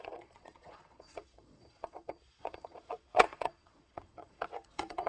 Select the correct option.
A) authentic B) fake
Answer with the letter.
B